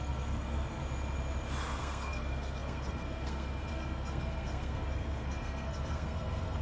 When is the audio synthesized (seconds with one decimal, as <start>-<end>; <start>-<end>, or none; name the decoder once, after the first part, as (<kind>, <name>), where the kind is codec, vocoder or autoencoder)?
0.0-0.8 (codec, SNAC); 1.8-6.6